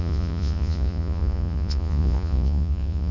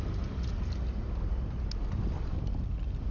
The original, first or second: second